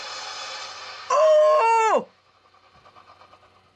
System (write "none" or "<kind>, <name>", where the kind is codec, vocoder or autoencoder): none